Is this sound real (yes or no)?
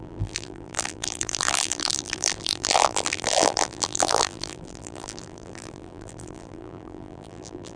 no